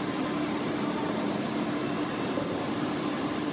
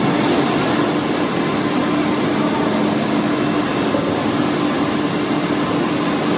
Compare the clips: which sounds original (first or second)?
second